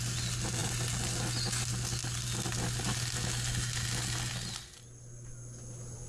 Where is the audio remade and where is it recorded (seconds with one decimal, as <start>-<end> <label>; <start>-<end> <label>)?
0.0-6.1 recorded